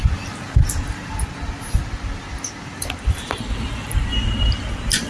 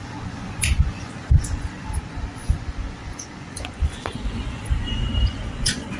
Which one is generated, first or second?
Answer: second